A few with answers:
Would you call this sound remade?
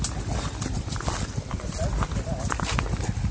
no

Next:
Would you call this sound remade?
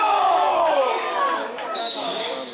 yes